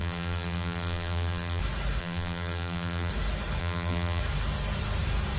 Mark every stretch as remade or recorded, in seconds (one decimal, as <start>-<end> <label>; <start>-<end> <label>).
0.0-1.6 remade; 1.6-2.0 recorded; 2.0-3.1 remade; 3.1-3.6 recorded; 3.6-4.2 remade; 4.2-5.4 recorded